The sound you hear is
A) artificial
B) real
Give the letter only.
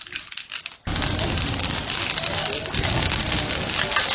B